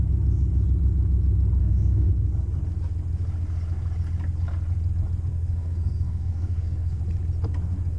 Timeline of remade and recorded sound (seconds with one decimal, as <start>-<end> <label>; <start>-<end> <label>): 0.0-1.6 recorded; 1.6-2.1 remade; 2.1-5.3 recorded; 5.3-7.0 remade; 7.0-8.0 recorded